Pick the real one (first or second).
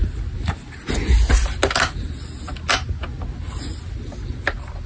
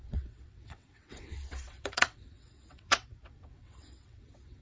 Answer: first